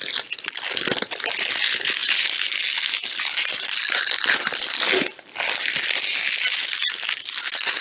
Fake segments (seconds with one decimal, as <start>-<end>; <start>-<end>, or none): none